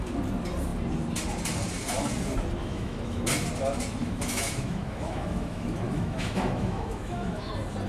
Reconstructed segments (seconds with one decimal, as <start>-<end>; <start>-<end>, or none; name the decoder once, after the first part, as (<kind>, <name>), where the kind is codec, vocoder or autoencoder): 2.6-3.2 (autoencoder, DAC-VAE); 4.0-7.5